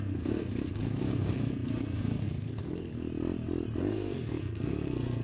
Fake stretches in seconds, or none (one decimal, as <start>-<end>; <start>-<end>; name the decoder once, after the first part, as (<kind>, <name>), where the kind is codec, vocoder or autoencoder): 0.0-3.1 (codec, SNAC); 3.8-5.2